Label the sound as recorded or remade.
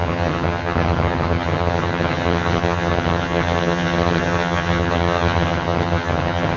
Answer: remade